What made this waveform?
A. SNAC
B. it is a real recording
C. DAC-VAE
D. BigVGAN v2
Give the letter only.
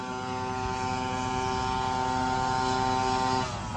B